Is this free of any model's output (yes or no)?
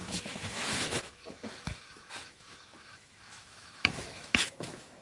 no